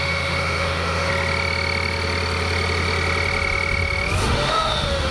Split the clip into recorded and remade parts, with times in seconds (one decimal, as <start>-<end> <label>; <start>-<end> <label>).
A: 0.0-1.1 remade; 1.1-4.2 recorded; 4.2-5.1 remade